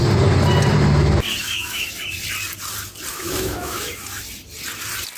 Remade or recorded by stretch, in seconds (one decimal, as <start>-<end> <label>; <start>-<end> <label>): 0.0-1.4 recorded; 1.4-1.9 remade; 1.9-3.1 recorded; 3.1-4.0 remade; 4.0-5.2 recorded